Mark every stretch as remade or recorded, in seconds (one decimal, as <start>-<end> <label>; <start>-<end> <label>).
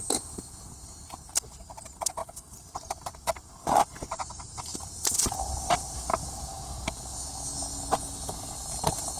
0.0-2.2 remade; 2.2-4.1 recorded; 4.1-6.5 remade; 6.5-8.4 recorded; 8.4-9.2 remade